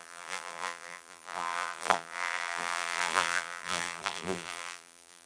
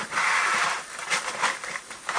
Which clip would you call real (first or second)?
second